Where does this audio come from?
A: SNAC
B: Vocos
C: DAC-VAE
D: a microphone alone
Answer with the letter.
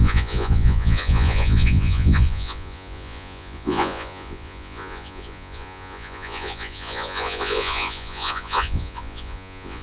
B